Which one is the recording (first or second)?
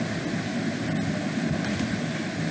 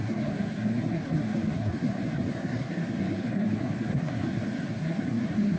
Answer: first